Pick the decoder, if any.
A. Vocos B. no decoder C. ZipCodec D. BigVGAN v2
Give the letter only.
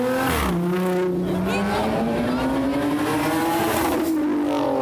B